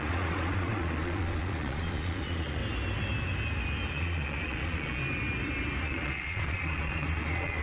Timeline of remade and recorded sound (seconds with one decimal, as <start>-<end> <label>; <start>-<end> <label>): 0.0-2.6 remade; 2.6-3.9 recorded; 3.9-5.0 remade; 5.0-5.8 recorded; 5.8-7.6 remade